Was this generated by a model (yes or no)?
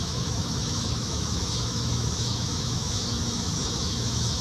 yes